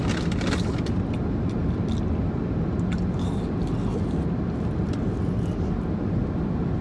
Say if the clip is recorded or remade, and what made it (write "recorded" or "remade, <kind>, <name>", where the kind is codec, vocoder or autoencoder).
recorded